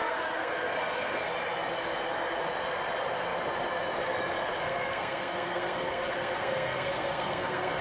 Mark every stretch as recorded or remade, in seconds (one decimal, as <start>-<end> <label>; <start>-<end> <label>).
0.0-1.3 remade; 1.3-4.6 recorded; 4.6-7.8 remade